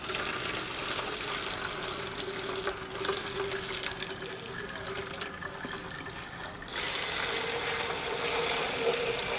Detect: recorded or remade recorded